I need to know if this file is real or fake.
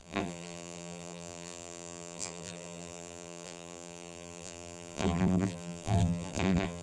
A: fake